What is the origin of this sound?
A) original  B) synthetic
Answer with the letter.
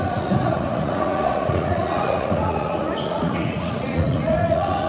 B